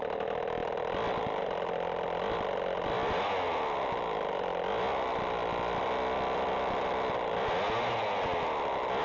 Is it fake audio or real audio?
real